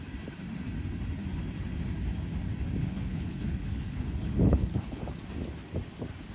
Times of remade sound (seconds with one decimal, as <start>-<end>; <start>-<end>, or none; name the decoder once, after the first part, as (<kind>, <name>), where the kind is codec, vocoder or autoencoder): 2.8-5.0 (codec, HILCodec)